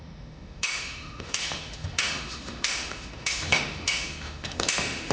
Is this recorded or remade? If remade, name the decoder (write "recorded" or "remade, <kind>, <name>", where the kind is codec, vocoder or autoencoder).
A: remade, autoencoder, DAC-VAE